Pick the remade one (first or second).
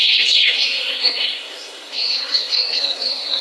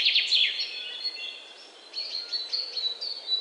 first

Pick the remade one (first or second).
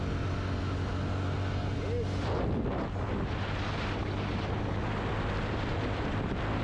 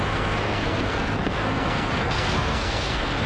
second